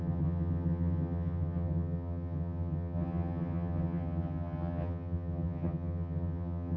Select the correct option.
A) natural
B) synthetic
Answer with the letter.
B